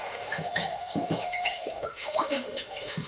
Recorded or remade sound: remade